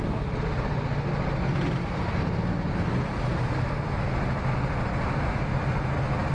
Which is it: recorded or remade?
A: recorded